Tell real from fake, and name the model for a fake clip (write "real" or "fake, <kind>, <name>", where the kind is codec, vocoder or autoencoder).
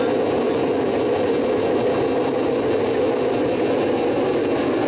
real